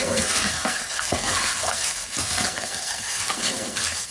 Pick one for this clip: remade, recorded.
remade